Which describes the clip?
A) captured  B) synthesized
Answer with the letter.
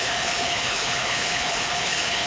B